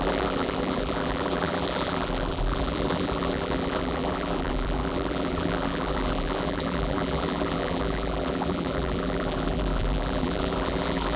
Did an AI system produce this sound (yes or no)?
yes